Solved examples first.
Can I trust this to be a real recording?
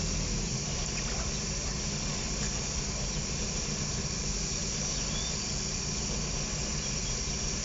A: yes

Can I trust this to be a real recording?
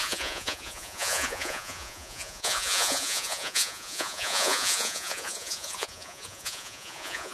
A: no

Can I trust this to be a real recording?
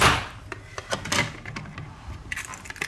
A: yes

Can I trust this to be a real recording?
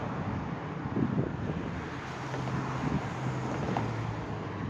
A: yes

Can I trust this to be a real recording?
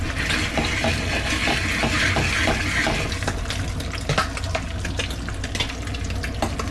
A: yes